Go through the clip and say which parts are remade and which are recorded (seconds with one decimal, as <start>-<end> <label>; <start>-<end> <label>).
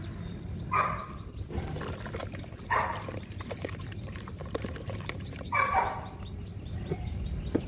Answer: 0.0-2.2 recorded; 2.2-6.8 remade; 6.8-7.7 recorded